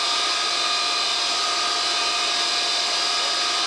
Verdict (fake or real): real